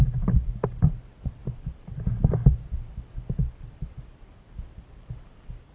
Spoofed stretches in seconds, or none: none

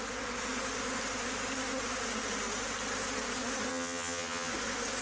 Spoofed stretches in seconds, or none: 3.7-4.5 (vocoder, HiFi-GAN)